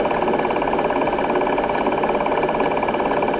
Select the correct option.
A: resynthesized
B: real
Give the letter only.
B